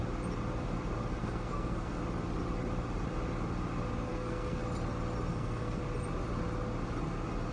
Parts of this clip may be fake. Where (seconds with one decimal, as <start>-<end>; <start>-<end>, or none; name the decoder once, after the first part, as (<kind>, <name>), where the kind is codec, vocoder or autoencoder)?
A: 1.2-2.0 (codec, SNAC); 4.1-4.6; 5.3-5.8

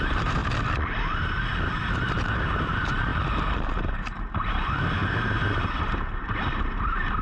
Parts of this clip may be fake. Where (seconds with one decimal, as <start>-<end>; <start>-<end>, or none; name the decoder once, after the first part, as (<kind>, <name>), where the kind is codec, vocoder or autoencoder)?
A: 0.0-0.4 (vocoder, BigVGAN v2); 1.7-3.1; 3.8-7.2

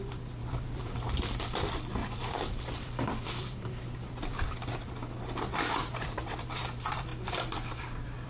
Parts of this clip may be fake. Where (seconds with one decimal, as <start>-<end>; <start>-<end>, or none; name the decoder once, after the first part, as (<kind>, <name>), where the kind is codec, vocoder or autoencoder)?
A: 0.0-4.6 (vocoder, BigVGAN v2); 5.7-7.1; 7.8-8.3

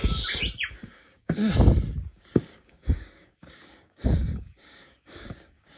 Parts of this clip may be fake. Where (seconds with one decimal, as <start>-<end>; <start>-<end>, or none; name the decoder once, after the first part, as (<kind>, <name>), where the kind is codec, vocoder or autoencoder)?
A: 0.8-1.5 (codec, DAC); 2.1-5.8

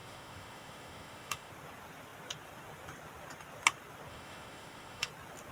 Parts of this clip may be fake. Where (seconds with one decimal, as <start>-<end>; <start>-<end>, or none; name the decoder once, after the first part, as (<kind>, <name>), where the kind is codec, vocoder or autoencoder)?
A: 0.0-1.5 (autoencoder, DAC-VAE); 4.1-5.1

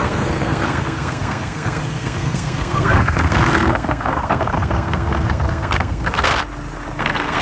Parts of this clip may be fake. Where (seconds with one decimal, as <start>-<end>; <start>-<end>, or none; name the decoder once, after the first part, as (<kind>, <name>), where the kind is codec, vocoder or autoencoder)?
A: 0.0-6.3 (codec, SNAC); 7.0-7.4